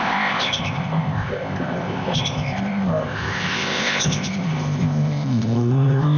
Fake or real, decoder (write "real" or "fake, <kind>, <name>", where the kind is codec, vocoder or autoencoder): fake, codec, ZipCodec